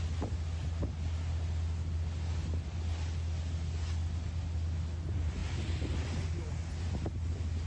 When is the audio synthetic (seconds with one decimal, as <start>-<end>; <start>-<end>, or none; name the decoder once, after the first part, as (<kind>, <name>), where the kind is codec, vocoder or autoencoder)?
5.4-6.2 (vocoder, BigVGAN v2)